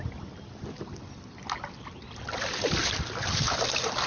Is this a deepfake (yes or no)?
no